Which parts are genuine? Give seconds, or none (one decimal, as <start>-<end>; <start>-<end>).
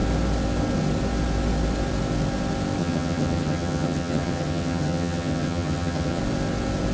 0.0-2.8; 6.2-6.9